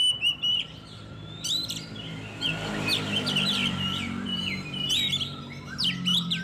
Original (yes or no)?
no